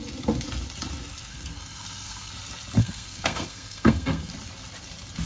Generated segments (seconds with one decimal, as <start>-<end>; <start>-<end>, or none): 1.3-2.3; 2.8-4.3